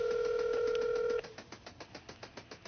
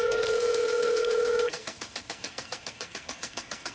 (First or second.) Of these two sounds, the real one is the first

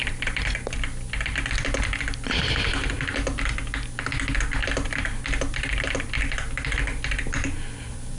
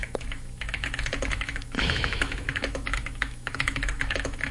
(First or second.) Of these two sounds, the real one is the first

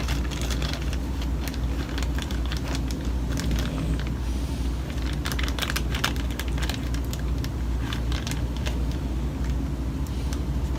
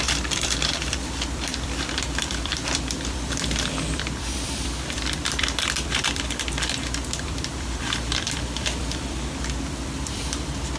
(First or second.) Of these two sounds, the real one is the first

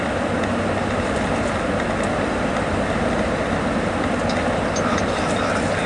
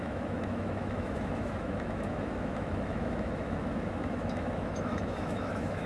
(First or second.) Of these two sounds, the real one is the first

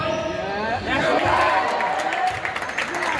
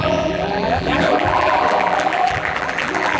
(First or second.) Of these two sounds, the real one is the first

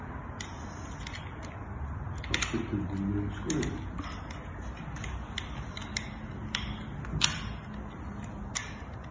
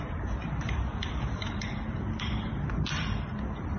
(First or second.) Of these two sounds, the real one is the first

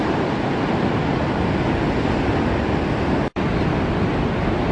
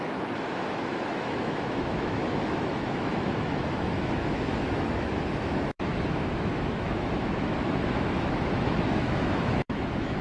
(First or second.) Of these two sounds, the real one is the first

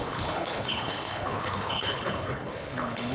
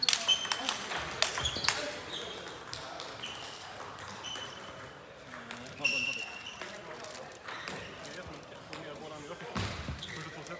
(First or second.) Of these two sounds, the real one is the second